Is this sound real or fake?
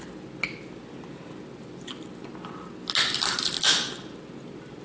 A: real